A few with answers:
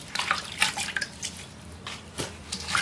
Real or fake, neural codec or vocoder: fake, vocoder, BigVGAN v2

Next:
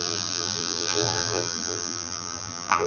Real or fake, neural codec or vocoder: fake, vocoder, BigVGAN v2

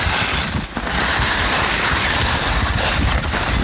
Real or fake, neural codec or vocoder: fake, vocoder, BigVGAN v2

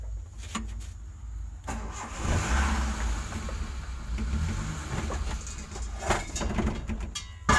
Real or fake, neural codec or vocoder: real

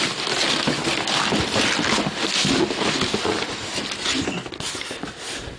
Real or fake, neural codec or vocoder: real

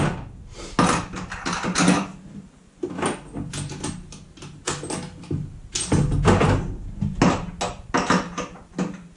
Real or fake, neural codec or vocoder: real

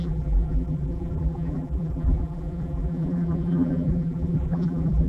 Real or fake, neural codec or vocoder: fake, vocoder, BigVGAN v2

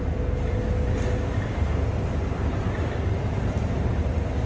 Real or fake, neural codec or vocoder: fake, vocoder, BigVGAN v2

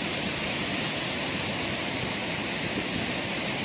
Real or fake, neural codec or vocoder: fake, vocoder, BigVGAN v2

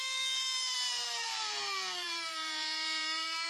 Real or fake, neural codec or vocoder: fake, vocoder, BigVGAN v2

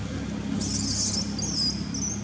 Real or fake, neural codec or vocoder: real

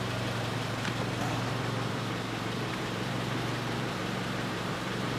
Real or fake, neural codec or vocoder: fake, vocoder, BigVGAN v2